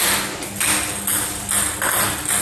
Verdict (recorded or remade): recorded